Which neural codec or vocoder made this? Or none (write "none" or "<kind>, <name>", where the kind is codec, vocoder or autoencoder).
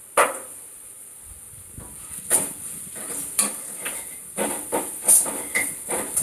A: none